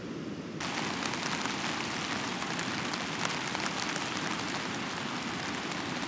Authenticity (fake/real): real